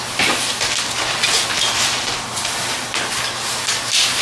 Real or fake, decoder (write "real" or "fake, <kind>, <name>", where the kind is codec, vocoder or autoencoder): real